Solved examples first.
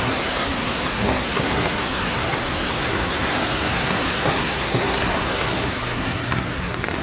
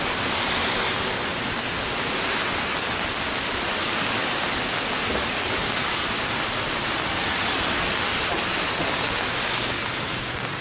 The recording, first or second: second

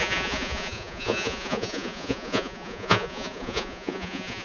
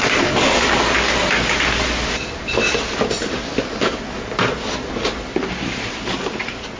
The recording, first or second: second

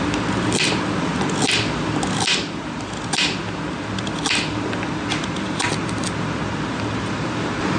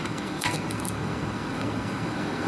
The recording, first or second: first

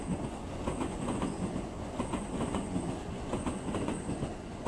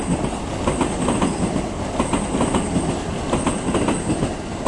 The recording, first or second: second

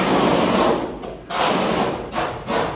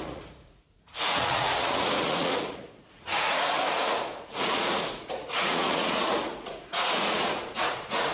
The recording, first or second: first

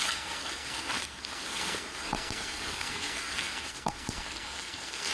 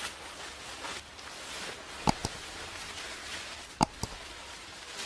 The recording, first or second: second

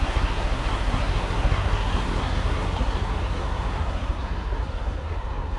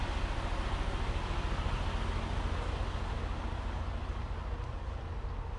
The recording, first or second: second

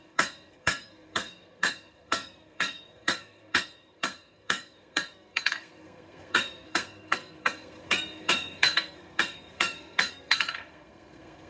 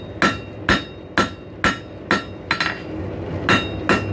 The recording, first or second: second